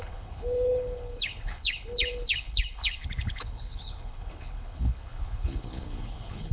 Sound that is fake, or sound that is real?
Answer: fake